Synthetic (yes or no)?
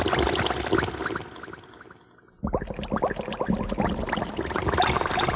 no